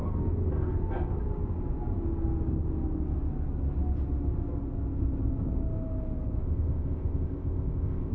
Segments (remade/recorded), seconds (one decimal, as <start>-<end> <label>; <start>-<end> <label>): 0.0-6.4 recorded; 6.4-8.1 remade